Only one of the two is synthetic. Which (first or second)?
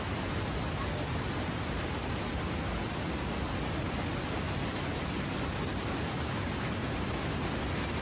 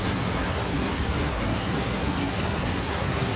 second